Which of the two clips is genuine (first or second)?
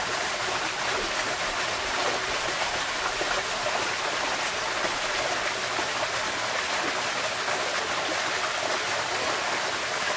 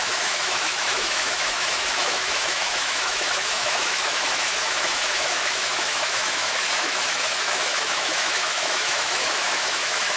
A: first